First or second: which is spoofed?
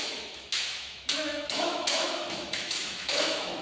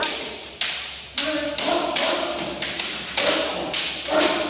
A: first